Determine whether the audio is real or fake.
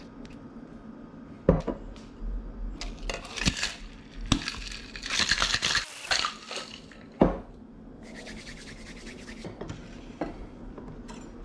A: real